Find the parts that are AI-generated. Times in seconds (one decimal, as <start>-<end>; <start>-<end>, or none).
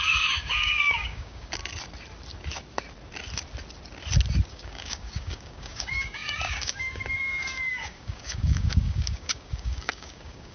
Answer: 0.0-1.6; 4.5-10.5